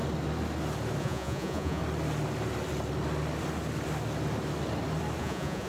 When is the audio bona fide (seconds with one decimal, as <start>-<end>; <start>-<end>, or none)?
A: 0.0-1.0; 1.8-5.2